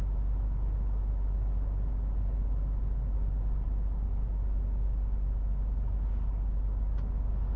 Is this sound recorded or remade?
recorded